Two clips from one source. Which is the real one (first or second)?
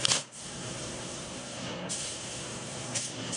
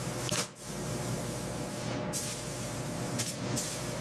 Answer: second